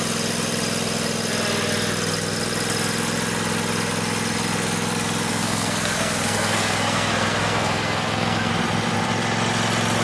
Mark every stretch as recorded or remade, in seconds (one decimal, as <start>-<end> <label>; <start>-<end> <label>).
0.0-5.3 recorded; 5.3-8.5 remade; 8.5-10.0 recorded